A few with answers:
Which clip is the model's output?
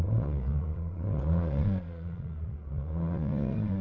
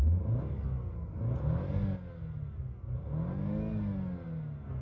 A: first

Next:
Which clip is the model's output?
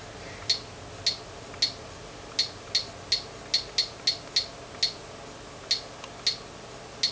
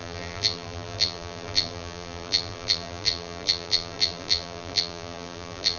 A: second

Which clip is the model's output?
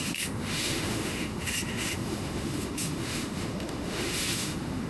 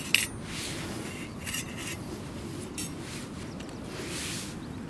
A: first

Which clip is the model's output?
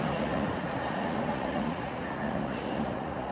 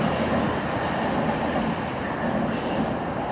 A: first